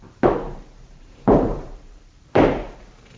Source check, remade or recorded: remade